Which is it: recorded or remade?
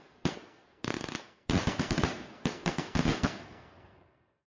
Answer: remade